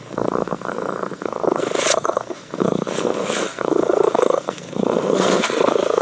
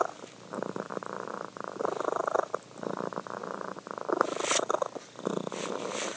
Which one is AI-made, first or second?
first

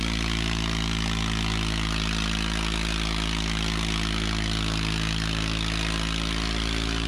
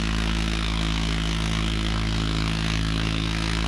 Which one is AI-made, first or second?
second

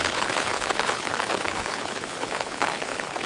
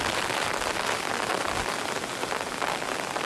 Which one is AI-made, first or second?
first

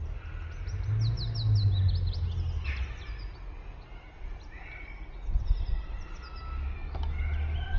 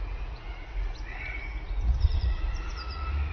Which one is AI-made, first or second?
second